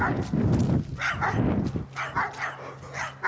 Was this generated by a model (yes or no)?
no